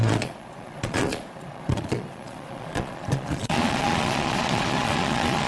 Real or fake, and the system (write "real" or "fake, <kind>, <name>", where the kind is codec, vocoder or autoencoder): fake, vocoder, Vocos